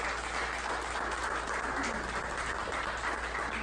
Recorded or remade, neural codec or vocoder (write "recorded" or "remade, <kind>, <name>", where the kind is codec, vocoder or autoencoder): recorded